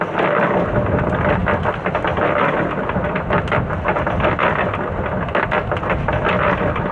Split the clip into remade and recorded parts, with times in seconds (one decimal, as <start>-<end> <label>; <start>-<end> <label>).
0.0-6.9 recorded